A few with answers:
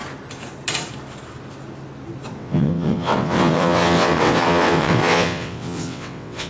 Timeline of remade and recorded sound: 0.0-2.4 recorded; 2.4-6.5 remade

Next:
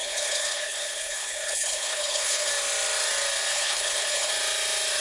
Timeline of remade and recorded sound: 0.0-2.5 remade; 2.5-3.5 recorded; 3.5-4.3 remade; 4.3-5.0 recorded

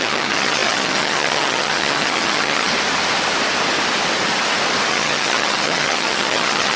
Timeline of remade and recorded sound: 0.0-2.7 remade; 2.7-4.9 recorded; 4.9-6.8 remade